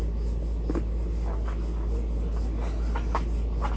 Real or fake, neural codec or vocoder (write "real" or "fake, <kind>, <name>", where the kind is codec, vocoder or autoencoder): real